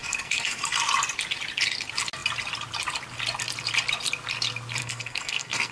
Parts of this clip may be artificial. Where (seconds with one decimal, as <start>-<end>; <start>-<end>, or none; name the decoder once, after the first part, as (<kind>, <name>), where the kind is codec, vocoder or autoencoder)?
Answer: 0.0-0.8 (codec, SNAC); 4.8-5.7